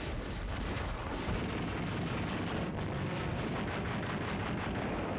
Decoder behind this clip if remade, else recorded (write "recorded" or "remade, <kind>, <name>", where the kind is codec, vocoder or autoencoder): recorded